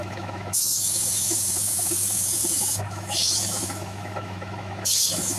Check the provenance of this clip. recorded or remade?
remade